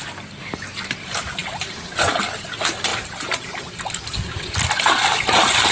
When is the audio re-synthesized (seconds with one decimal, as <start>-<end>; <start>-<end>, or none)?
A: 2.9-3.8

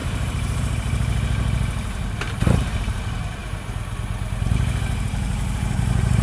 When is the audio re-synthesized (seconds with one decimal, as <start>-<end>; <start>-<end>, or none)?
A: 0.0-3.4; 4.4-6.2

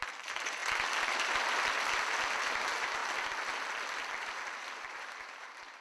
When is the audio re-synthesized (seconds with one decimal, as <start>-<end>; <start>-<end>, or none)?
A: 0.0-0.6; 2.6-3.0; 4.2-5.8

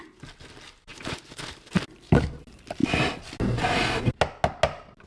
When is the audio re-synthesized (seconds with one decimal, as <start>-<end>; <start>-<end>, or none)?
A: none

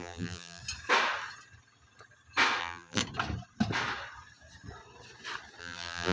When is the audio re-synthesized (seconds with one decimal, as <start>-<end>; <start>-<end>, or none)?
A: 0.0-0.6; 2.6-3.0; 5.6-6.1